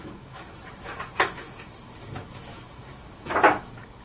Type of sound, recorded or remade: remade